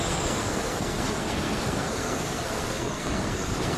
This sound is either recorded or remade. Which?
remade